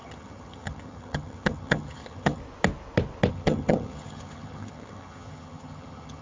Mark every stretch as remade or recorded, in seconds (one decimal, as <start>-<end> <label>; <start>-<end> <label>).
0.0-2.4 remade; 2.4-3.3 recorded; 3.3-6.2 remade